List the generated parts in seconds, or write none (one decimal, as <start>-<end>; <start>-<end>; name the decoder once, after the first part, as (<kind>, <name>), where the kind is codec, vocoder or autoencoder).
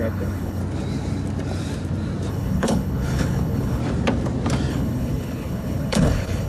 0.0-0.6 (codec, HILCodec); 2.3-3.8; 4.7-6.5